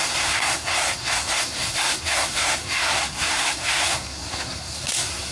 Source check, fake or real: fake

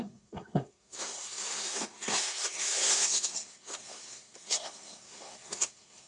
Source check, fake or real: fake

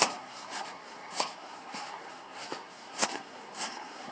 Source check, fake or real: fake